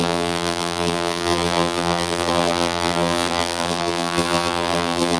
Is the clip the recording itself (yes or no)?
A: no